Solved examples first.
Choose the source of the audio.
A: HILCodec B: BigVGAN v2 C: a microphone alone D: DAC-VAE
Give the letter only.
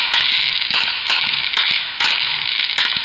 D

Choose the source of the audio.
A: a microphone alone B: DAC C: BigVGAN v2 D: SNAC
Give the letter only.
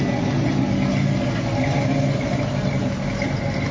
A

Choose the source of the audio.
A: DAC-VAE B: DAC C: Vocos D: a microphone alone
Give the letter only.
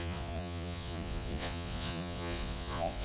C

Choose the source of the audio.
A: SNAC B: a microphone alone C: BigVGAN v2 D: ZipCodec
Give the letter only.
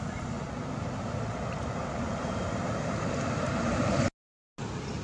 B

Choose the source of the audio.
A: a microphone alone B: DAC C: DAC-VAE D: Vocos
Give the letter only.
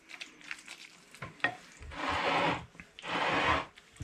A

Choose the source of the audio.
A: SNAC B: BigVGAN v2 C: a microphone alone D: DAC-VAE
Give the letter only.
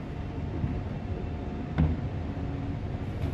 C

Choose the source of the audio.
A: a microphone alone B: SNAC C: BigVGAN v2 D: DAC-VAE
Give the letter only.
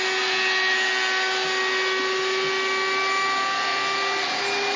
A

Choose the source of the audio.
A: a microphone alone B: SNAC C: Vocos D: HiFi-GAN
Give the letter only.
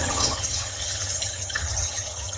D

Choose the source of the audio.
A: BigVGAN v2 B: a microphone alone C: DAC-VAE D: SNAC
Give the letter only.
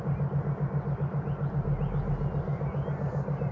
B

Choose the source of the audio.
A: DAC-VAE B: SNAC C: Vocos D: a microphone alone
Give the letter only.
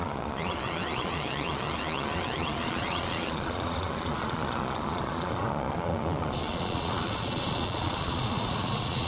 C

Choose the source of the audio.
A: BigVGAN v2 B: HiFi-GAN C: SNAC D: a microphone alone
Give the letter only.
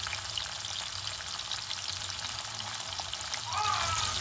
D